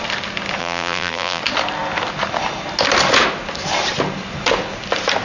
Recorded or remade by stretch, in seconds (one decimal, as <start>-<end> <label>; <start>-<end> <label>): 0.0-0.6 recorded; 0.6-1.4 remade; 1.4-5.2 recorded